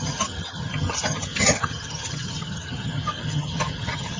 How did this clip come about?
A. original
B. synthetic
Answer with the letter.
B